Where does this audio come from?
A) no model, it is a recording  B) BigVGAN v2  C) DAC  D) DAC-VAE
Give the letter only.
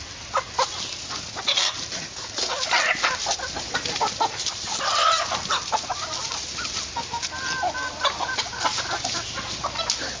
A